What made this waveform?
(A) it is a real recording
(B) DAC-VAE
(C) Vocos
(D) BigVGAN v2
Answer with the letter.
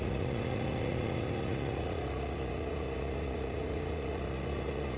C